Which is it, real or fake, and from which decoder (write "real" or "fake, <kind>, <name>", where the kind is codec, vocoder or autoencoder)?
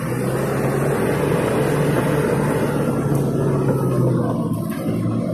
real